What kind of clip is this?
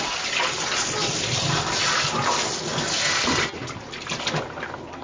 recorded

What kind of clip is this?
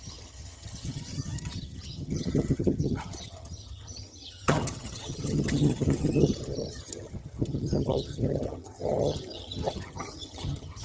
remade